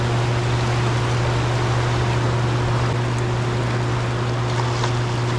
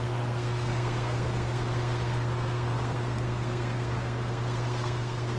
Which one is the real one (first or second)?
first